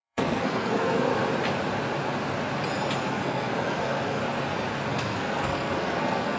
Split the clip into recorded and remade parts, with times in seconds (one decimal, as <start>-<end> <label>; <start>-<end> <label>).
0.0-1.1 remade; 1.1-3.1 recorded; 3.1-4.2 remade; 4.2-4.9 recorded; 4.9-6.4 remade